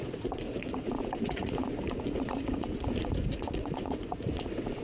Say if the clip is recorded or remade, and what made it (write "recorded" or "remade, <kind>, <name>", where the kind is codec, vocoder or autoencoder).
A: remade, vocoder, Vocos